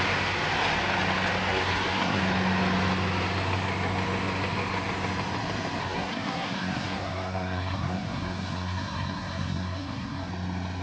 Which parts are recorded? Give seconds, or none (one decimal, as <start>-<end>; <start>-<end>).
0.0-1.5; 2.2-5.8; 10.3-10.8